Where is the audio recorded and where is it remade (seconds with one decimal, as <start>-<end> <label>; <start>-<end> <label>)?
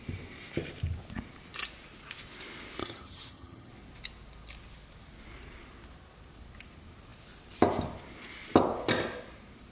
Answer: 0.0-2.8 recorded; 2.8-3.7 remade; 3.7-9.7 recorded